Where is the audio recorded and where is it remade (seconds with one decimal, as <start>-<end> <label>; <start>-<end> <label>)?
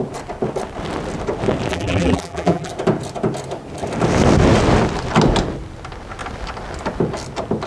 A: 0.0-1.7 recorded; 1.7-2.7 remade; 2.7-7.7 recorded